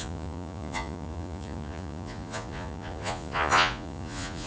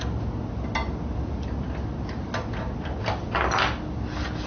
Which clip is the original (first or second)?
second